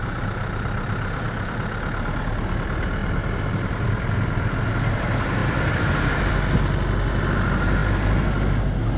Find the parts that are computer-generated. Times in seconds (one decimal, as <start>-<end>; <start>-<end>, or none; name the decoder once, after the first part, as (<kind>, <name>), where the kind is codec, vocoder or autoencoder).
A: 3.0-4.5 (vocoder, BigVGAN v2); 5.4-6.3